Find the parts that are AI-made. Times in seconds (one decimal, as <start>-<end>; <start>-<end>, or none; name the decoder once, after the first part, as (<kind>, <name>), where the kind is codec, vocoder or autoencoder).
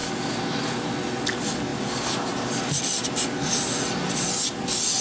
none